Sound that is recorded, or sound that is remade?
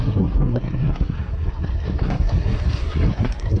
remade